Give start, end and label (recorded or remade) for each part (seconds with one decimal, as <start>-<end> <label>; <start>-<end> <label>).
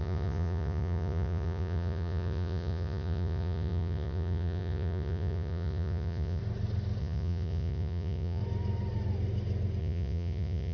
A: 0.0-6.4 remade; 6.4-7.0 recorded; 7.0-8.4 remade; 8.4-9.8 recorded; 9.8-10.7 remade